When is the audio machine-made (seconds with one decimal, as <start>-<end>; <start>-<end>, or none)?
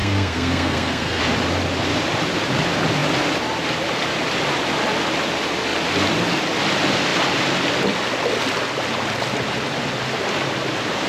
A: 0.0-1.2